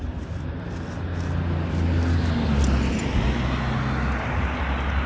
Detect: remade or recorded recorded